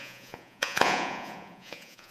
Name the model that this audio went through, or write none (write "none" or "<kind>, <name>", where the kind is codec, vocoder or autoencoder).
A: vocoder, Vocos